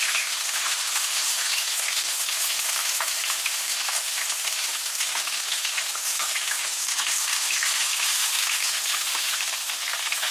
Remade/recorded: remade